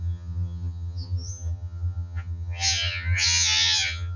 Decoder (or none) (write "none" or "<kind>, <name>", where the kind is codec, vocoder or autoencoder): vocoder, HiFi-GAN